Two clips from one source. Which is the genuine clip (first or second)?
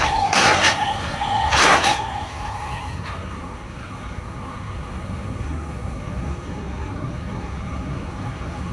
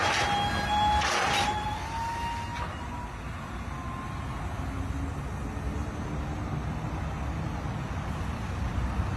second